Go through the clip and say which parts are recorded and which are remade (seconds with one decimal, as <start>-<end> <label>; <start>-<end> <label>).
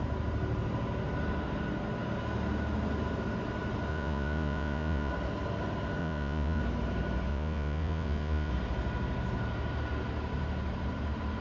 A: 0.0-3.9 recorded; 3.9-5.1 remade; 5.1-6.0 recorded; 6.0-6.6 remade; 6.6-7.3 recorded; 7.3-8.5 remade; 8.5-11.4 recorded